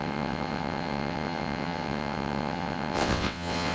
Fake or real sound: fake